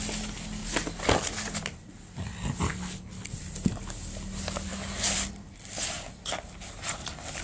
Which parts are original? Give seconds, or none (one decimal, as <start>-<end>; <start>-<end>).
0.0-2.7; 3.3-7.4